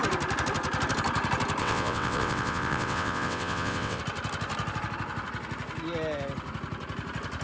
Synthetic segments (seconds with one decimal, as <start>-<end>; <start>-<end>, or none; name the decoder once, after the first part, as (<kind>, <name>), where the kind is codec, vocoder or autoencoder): 1.6-4.0 (vocoder, WaveNeXt)